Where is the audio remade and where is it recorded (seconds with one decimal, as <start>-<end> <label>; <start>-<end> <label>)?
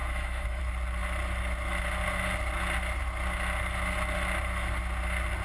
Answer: 0.0-0.6 remade; 0.6-5.4 recorded